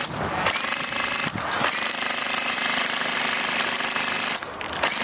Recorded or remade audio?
recorded